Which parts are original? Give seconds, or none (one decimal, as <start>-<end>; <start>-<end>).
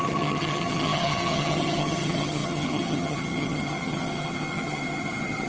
none